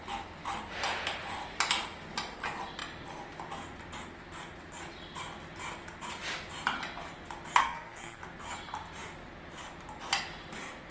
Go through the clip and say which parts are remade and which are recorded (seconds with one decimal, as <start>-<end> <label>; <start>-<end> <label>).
0.0-7.6 recorded; 7.6-8.2 remade; 8.2-10.9 recorded

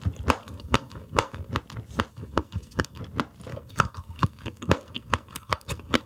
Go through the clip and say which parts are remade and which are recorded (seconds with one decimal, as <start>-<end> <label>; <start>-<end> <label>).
0.0-0.4 recorded; 0.4-1.5 remade; 1.5-2.1 recorded; 2.1-3.0 remade; 3.0-3.5 recorded; 3.5-6.1 remade

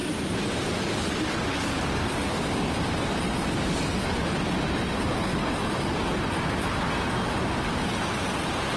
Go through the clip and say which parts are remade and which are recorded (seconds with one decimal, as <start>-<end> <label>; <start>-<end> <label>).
0.0-8.8 recorded